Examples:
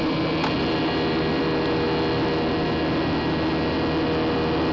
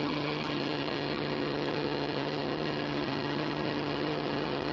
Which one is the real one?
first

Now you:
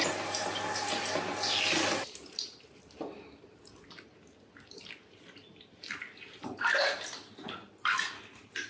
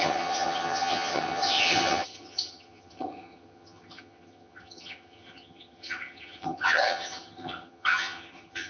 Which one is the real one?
first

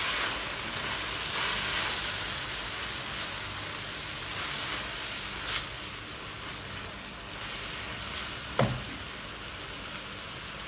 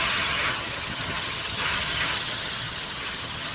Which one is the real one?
first